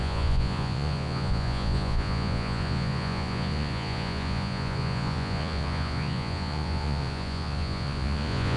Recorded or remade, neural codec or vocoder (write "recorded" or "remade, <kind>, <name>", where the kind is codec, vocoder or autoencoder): remade, vocoder, Vocos